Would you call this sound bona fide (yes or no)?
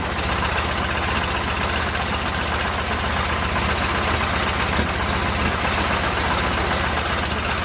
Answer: yes